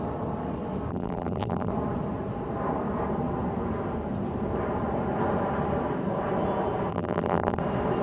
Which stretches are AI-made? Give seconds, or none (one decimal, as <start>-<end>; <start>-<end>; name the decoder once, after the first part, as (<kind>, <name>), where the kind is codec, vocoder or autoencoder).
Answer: 0.9-1.7 (vocoder, BigVGAN v2); 6.9-7.6